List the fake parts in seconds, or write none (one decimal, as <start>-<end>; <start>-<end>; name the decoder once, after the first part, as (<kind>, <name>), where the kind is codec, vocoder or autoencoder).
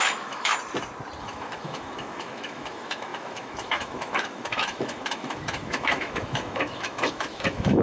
0.0-0.5 (autoencoder, DAC-VAE); 1.2-7.8